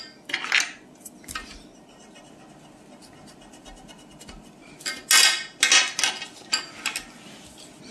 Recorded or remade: recorded